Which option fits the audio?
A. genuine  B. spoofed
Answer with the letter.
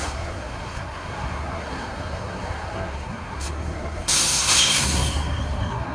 B